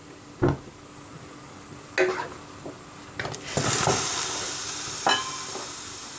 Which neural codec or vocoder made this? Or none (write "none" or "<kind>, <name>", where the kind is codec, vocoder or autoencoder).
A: none